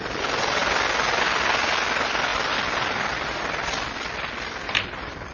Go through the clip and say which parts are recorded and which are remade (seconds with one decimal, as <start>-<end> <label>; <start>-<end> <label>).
0.0-5.3 recorded